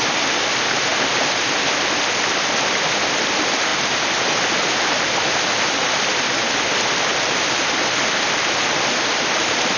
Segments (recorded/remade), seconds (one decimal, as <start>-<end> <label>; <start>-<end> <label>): 0.0-0.9 remade; 0.9-2.4 recorded; 2.4-9.8 remade